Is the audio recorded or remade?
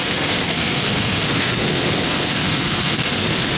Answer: remade